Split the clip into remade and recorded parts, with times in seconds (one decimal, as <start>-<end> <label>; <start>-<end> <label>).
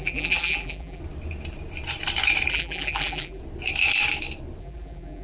0.0-1.0 remade; 1.0-2.5 recorded; 2.5-3.4 remade; 3.4-4.6 recorded; 4.6-5.2 remade